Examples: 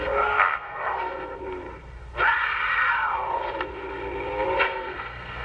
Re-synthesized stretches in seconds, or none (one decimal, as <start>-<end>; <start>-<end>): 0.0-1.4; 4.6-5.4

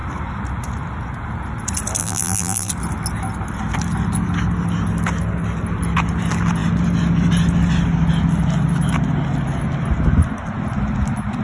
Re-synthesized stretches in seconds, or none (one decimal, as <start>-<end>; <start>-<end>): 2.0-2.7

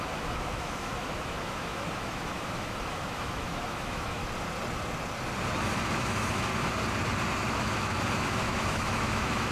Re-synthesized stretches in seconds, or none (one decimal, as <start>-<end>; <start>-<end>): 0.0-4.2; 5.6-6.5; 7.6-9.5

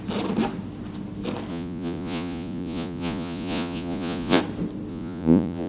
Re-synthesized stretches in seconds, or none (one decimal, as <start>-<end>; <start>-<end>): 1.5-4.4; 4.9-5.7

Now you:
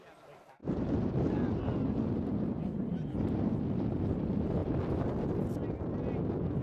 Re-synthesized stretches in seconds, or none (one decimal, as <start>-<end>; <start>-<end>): 4.6-5.2

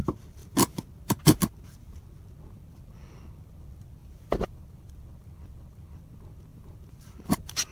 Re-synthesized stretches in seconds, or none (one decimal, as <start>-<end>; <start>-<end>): 0.4-2.0; 4.0-4.7; 6.5-7.7